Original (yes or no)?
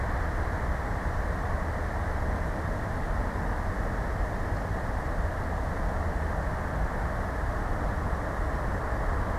yes